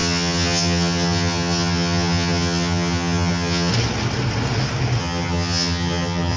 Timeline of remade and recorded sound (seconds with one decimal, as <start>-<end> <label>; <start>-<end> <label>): 0.0-3.7 remade; 3.7-5.0 recorded; 5.0-6.4 remade